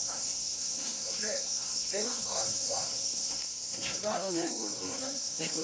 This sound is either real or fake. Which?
fake